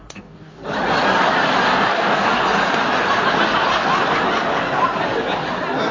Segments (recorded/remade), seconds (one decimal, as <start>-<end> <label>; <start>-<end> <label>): 0.0-0.6 remade; 0.6-1.9 recorded; 1.9-2.3 remade; 2.3-5.9 recorded